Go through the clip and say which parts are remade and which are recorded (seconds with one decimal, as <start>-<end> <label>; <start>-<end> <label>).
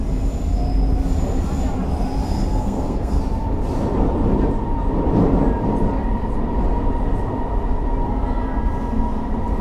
0.0-2.2 recorded; 2.2-3.2 remade; 3.2-9.6 recorded